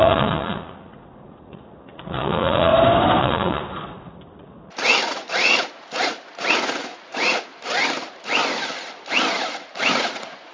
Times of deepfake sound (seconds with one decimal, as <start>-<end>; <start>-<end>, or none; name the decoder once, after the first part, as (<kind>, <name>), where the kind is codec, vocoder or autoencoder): 0.0-2.7 (vocoder, Vocos); 3.2-3.6; 4.4-7.5; 9.3-10.5